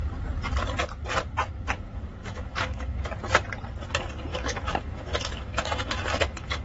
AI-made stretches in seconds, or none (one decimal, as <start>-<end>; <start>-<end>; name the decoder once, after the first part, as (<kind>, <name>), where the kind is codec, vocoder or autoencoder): 2.2-3.1 (autoencoder, DAC-VAE); 4.3-6.6